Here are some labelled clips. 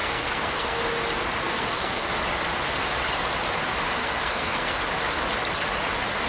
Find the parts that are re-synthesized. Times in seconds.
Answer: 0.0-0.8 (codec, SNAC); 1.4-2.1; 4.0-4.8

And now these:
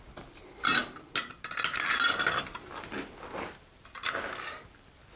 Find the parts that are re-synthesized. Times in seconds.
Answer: none

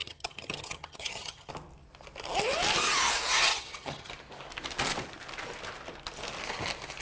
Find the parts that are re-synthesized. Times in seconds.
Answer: 0.0-1.5 (vocoder, HiFi-GAN); 3.5-4.1

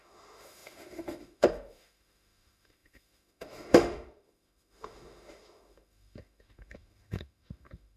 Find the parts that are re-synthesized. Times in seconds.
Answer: 0.0-8.0 (autoencoder, DAC-VAE)

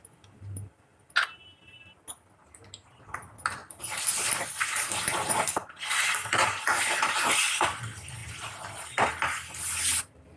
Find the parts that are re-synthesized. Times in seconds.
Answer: none

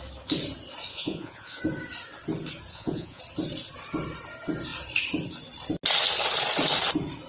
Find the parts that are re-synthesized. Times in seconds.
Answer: 0.9-1.6 (vocoder, Vocos); 2.7-3.2

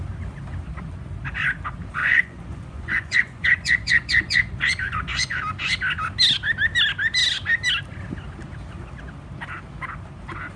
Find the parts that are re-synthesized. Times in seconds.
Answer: 2.0-5.4 (vocoder, Vocos)

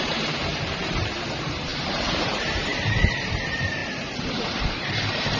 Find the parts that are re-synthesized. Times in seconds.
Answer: 0.0-5.4 (vocoder, BigVGAN v2)